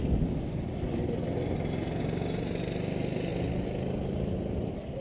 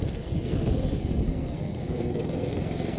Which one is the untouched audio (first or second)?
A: first